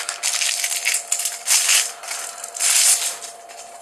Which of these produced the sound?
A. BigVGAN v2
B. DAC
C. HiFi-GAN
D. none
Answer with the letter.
D